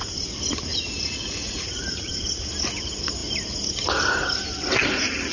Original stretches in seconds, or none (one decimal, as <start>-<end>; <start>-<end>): 0.0-0.7; 2.1-5.3